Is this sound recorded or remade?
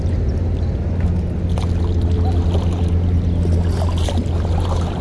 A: recorded